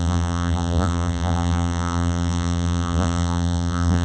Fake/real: fake